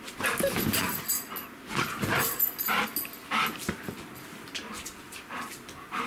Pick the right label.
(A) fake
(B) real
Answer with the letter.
B